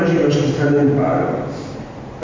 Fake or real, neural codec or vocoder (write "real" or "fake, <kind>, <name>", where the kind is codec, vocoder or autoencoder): real